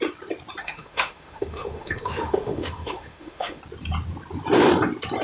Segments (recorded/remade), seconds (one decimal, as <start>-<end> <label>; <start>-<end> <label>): 0.0-0.6 recorded; 0.6-3.6 remade; 3.6-5.2 recorded